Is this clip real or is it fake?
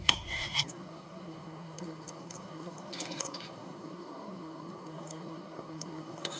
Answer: fake